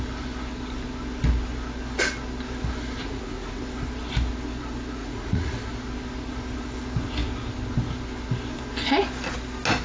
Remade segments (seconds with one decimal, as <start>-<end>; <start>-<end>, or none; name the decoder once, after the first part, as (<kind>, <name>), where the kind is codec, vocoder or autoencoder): 3.0-3.6 (vocoder, Vocos); 5.0-5.6